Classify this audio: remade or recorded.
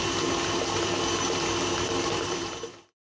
recorded